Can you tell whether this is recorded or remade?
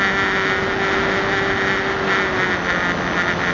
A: recorded